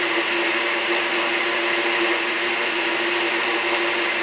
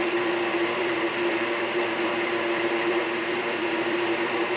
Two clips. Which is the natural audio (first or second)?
first